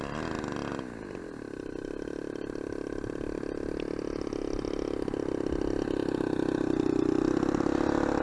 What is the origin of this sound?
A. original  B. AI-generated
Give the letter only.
A